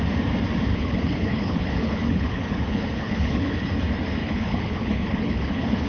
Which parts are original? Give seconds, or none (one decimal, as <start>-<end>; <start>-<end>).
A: 0.0-0.7; 3.7-4.2

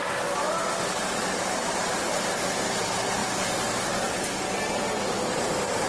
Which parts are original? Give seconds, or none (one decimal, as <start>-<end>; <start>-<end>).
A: 0.0-5.9